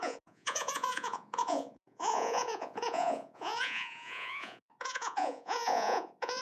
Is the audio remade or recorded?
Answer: remade